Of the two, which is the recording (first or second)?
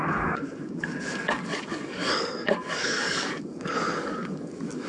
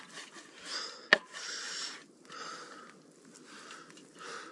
second